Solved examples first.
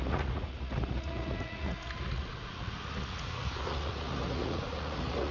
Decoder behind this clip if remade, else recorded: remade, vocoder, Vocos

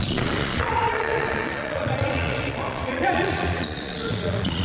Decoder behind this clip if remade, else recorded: remade, vocoder, Vocos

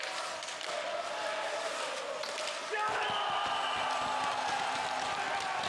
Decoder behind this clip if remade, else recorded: recorded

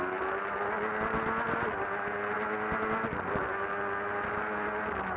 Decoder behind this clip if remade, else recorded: recorded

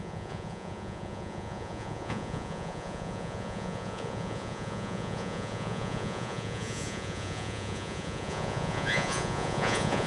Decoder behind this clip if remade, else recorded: remade, vocoder, Vocos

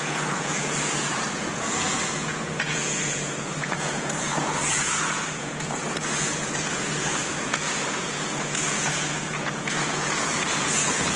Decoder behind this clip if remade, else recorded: remade, vocoder, Vocos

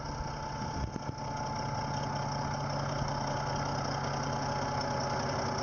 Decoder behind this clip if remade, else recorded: recorded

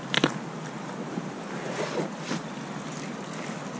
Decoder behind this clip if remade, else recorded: recorded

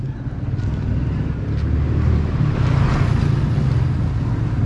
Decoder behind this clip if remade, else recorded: recorded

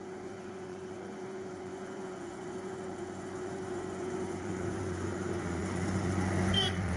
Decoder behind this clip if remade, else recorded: remade, vocoder, Vocos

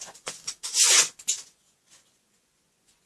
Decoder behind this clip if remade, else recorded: remade, vocoder, Vocos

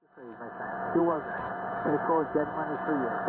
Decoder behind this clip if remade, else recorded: remade, vocoder, Vocos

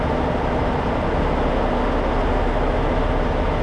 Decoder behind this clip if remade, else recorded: recorded